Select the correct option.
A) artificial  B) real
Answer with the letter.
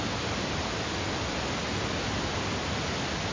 B